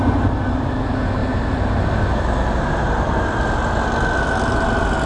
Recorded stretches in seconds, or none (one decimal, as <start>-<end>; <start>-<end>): 0.0-5.1